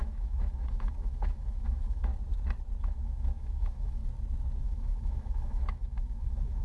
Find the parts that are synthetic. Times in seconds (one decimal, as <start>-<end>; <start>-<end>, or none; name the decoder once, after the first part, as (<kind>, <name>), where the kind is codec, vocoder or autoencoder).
0.0-2.1 (autoencoder, DAC-VAE); 2.8-4.0; 4.6-6.6